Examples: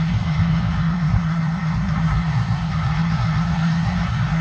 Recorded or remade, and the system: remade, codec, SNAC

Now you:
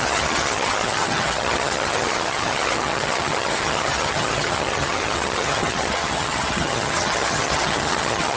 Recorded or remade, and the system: remade, vocoder, HiFi-GAN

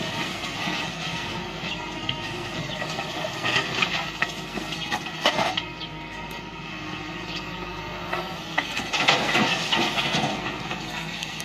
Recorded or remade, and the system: remade, codec, SNAC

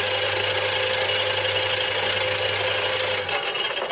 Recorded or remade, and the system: recorded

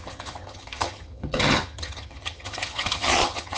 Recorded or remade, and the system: remade, vocoder, HiFi-GAN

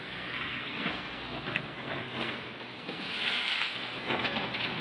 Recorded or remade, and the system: remade, codec, SNAC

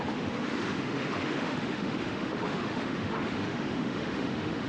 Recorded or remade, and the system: remade, autoencoder, DAC-VAE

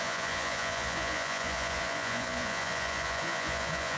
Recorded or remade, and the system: remade, vocoder, Vocos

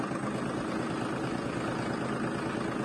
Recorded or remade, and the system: recorded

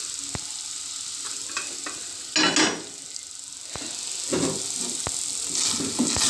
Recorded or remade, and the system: recorded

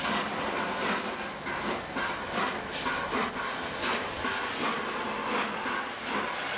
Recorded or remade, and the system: recorded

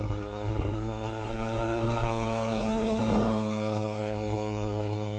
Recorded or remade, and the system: remade, codec, SNAC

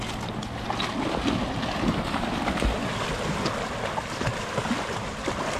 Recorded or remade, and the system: recorded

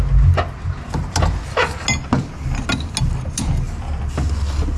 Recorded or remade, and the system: recorded